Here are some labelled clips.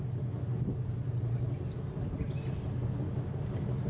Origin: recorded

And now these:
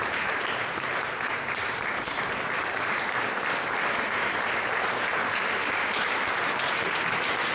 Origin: remade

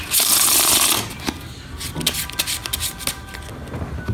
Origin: recorded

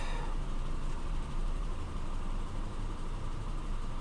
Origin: remade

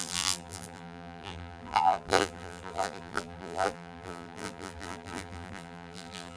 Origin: remade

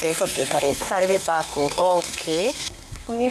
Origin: remade